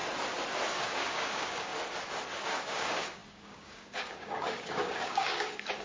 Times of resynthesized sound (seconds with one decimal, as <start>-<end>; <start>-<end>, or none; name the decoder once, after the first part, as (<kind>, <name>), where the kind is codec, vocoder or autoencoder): 0.8-1.7 (codec, DAC); 2.4-5.8